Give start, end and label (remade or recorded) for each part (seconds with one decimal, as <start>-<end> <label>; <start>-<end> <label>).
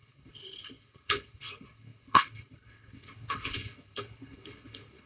0.0-5.1 remade